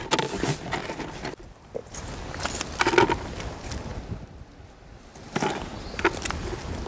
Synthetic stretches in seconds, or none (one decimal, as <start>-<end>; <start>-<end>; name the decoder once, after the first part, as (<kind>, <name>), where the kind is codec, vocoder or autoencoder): none